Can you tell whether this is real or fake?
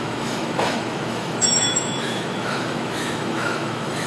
fake